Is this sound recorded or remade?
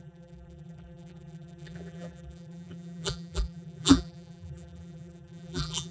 remade